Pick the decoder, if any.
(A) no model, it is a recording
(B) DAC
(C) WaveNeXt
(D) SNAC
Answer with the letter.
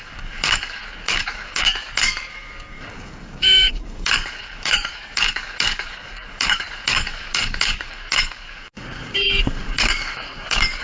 B